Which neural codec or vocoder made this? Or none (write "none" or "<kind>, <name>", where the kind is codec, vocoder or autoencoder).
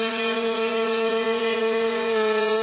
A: vocoder, Vocos